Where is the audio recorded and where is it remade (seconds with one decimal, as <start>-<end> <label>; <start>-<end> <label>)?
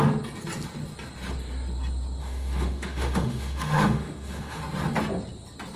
0.0-2.2 recorded; 2.2-4.6 remade; 4.6-5.8 recorded